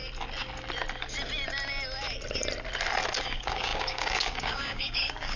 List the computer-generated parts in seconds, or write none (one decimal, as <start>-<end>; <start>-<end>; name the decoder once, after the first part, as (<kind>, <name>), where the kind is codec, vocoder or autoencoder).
3.2-5.4 (codec, DAC)